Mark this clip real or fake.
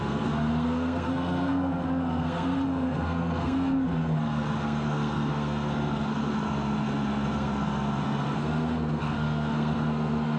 fake